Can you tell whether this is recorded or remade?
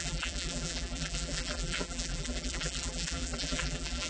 remade